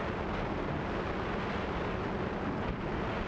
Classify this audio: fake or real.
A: real